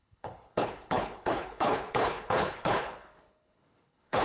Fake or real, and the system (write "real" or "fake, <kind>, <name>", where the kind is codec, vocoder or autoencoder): fake, codec, HILCodec